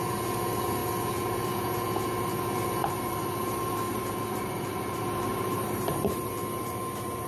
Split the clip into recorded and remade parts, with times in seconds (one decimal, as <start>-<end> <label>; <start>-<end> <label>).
0.0-2.8 recorded; 2.8-6.3 remade; 6.3-7.3 recorded